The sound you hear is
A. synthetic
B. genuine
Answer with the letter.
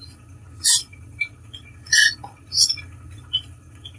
A